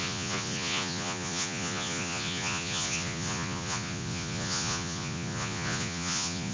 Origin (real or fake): fake